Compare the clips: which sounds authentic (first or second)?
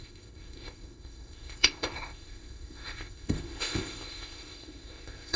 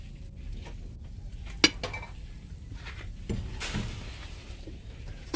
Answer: second